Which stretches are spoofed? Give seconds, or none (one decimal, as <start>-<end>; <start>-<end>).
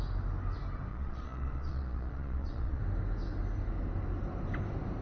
0.9-2.8